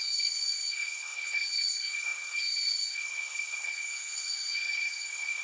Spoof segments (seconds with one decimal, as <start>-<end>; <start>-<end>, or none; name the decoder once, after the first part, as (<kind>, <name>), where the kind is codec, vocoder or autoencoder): 0.0-5.4 (codec, HILCodec)